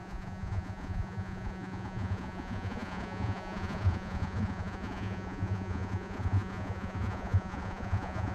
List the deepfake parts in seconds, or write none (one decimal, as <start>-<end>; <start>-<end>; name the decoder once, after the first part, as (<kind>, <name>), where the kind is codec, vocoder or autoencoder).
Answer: 0.0-8.3 (vocoder, Vocos)